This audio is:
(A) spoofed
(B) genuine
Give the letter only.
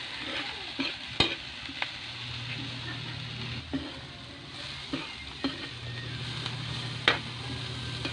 B